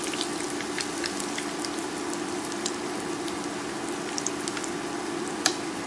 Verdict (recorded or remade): recorded